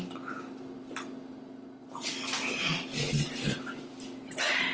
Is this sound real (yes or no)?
yes